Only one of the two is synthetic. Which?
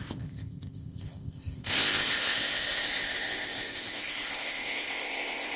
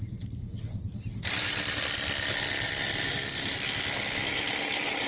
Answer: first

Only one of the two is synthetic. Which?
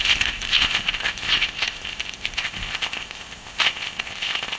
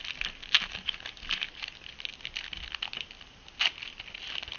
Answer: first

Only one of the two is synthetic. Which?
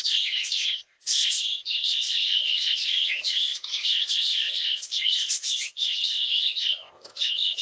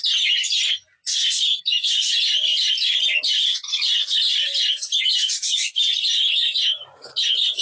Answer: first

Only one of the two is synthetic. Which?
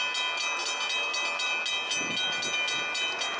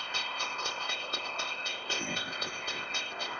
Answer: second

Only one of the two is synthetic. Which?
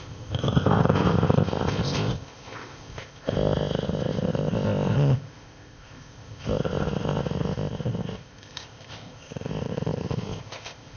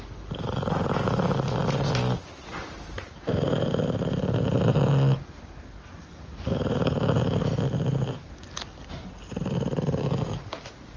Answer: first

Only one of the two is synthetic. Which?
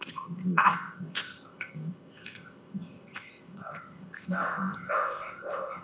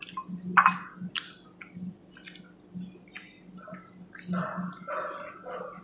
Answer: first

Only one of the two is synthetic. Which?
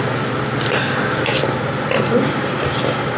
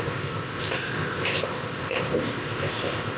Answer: second